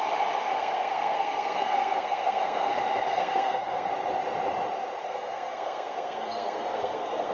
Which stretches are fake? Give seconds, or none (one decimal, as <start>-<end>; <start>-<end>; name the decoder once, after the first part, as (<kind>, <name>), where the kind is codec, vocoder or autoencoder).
0.5-2.7 (codec, SNAC); 3.1-3.9; 5.0-7.3